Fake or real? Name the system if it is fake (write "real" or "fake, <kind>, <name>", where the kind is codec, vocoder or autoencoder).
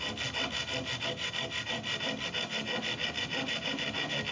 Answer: real